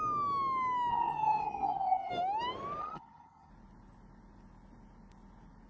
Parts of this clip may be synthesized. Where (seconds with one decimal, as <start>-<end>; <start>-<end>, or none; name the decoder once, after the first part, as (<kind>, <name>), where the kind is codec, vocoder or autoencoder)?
0.9-2.1 (vocoder, HiFi-GAN); 2.8-3.5